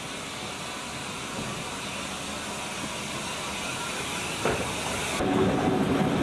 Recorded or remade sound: recorded